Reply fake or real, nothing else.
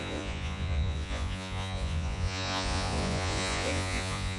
fake